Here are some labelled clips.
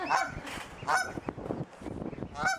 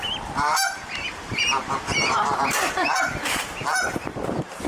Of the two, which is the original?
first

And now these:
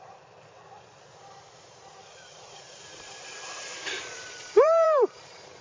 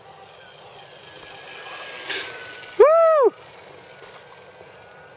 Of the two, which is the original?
second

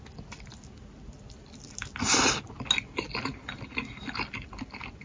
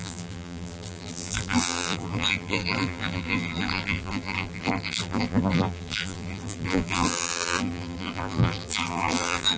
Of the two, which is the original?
first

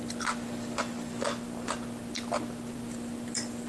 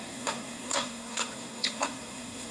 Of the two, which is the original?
first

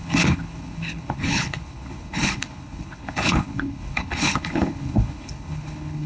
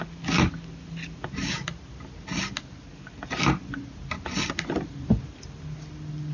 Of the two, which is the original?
second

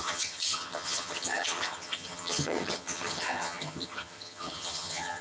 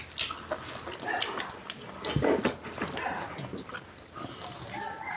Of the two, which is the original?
second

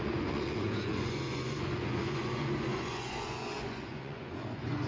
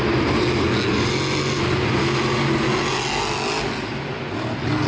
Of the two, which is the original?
second